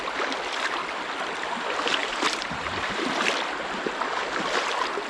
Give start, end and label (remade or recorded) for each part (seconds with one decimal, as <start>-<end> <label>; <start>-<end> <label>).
0.0-2.0 recorded; 2.0-3.1 remade; 3.1-5.1 recorded